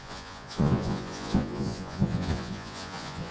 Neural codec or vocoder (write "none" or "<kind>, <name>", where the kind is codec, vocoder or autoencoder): vocoder, Vocos